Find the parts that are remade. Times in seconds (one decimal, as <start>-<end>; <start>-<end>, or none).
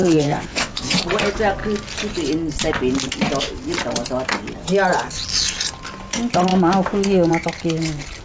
0.0-1.0